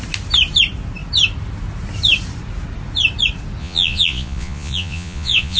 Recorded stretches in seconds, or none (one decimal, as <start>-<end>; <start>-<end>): 0.0-3.6